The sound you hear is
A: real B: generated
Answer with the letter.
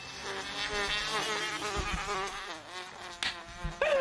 A